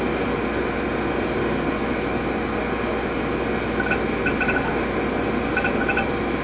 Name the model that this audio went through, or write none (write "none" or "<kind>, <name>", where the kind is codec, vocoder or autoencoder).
none